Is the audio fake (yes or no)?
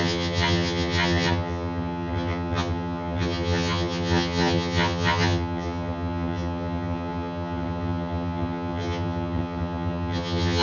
yes